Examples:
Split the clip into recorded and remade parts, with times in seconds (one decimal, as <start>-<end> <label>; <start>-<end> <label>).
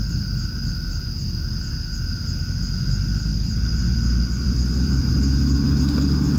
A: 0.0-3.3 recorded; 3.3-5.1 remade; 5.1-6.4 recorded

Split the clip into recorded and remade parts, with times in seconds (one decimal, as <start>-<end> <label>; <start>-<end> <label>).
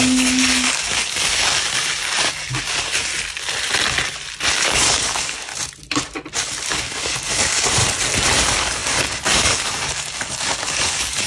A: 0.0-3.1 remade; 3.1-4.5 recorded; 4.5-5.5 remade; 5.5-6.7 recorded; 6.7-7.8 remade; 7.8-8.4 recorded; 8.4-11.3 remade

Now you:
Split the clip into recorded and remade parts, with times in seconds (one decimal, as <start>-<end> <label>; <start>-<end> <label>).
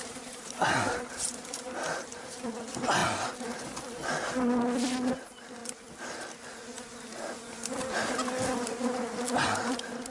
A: 0.0-3.0 remade; 3.0-5.1 recorded; 5.1-5.6 remade; 5.6-9.3 recorded; 9.3-10.1 remade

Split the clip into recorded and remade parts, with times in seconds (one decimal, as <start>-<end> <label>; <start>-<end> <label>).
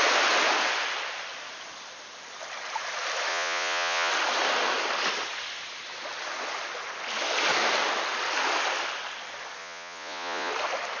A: 0.0-3.3 recorded; 3.3-4.1 remade; 4.1-9.6 recorded; 9.6-10.5 remade; 10.5-11.0 recorded